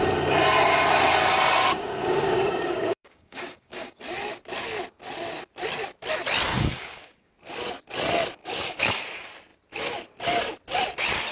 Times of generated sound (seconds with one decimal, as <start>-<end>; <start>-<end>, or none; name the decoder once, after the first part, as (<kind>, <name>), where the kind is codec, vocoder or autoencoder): 1.6-4.0 (codec, DAC); 6.5-7.3; 8.4-9.0